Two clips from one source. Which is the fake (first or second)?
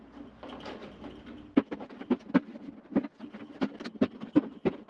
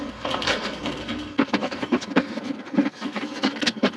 second